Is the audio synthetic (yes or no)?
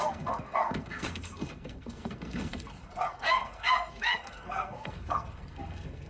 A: yes